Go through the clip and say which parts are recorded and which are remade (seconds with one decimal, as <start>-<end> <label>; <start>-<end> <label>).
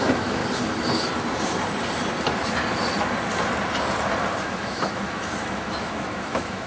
0.0-0.4 remade; 0.4-4.4 recorded; 4.4-6.7 remade